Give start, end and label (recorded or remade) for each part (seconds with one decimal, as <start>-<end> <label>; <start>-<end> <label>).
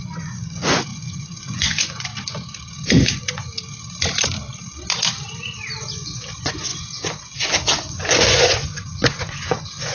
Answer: 0.0-2.1 remade; 2.1-2.6 recorded; 2.6-3.5 remade; 3.5-5.8 recorded; 5.8-9.9 remade